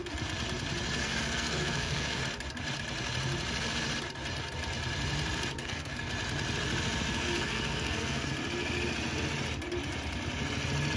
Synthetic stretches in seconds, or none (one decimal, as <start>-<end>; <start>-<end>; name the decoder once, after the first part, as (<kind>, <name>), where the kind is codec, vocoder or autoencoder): 1.0-2.2 (codec, SNAC); 5.6-6.1; 7.1-8.3